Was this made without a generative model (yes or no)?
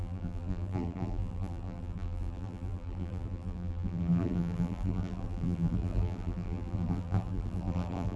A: no